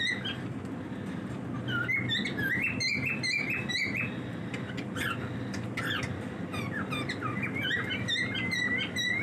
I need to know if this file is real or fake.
real